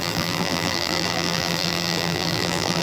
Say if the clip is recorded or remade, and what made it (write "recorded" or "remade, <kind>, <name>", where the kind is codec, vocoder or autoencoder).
remade, vocoder, BigVGAN v2